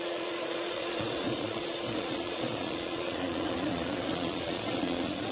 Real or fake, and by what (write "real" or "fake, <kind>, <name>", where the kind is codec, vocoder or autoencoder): fake, vocoder, Vocos